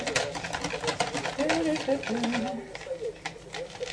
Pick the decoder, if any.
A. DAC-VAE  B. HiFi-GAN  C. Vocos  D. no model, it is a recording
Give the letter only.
D